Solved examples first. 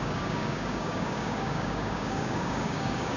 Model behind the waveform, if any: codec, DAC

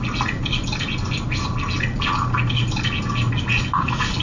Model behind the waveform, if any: none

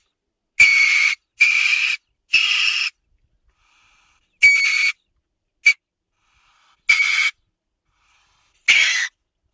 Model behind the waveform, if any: none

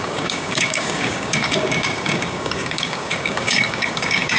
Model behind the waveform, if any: codec, DAC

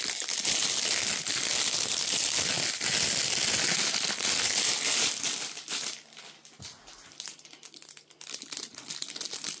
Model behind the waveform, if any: none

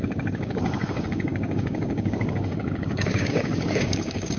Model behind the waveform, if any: codec, DAC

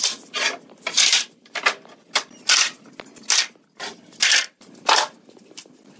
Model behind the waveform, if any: none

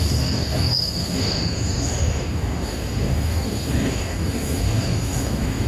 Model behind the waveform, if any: codec, DAC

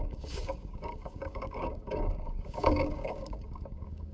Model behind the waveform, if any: codec, DAC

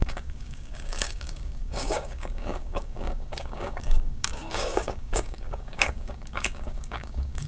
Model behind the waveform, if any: codec, DAC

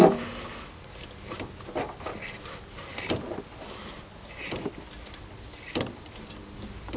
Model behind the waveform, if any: none